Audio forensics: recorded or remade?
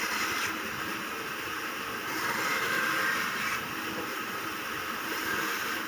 remade